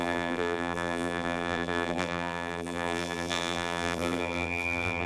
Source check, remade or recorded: remade